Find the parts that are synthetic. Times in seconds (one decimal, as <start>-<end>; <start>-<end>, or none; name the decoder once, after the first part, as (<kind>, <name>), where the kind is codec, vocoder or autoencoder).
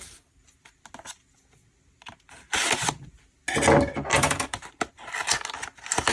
1.6-3.5 (vocoder, BigVGAN v2); 4.1-4.9